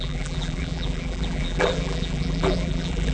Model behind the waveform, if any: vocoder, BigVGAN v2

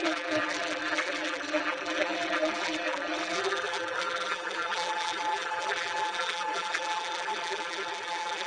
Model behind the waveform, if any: vocoder, BigVGAN v2